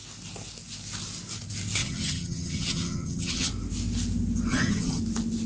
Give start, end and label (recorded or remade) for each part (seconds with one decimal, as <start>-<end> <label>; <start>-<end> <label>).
0.0-1.8 recorded; 1.8-3.5 remade; 3.5-4.5 recorded; 4.5-5.0 remade; 5.0-5.5 recorded